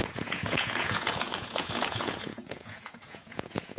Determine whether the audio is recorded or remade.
remade